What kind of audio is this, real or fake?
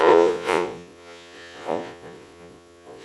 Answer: fake